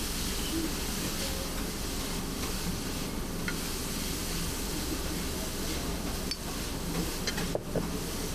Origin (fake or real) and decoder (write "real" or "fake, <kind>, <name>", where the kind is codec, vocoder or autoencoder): real